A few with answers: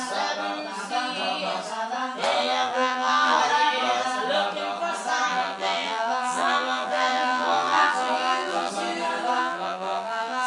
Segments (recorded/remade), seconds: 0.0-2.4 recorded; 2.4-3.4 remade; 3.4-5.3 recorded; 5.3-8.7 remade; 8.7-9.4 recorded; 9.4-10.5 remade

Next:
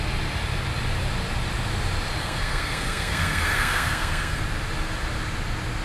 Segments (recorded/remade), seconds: 0.0-2.2 recorded; 2.2-4.4 remade; 4.4-5.8 recorded

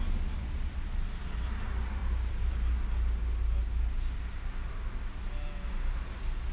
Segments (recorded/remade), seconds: 0.0-2.0 recorded; 2.0-2.5 remade; 2.5-6.5 recorded

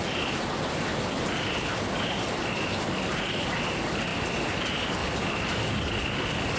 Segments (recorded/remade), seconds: 0.0-6.6 recorded

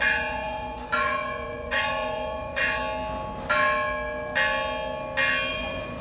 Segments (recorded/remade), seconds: 0.0-2.8 remade; 2.8-5.5 recorded; 5.5-6.0 remade